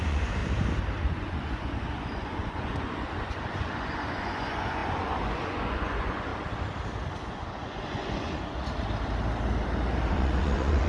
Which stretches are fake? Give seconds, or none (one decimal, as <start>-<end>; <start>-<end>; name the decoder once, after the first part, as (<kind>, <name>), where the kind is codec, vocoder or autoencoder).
0.0-0.4 (vocoder, Vocos); 1.0-6.3; 7.2-8.6; 10.1-10.9